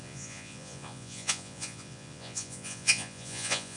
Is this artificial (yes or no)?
yes